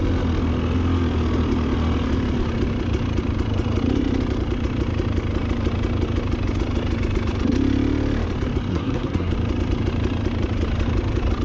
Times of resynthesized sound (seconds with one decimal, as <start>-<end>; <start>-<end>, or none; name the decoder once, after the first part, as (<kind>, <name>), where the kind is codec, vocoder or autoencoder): 8.7-9.3 (codec, SNAC)